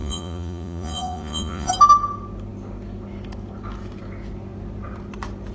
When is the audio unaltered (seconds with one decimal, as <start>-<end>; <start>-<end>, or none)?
1.7-5.5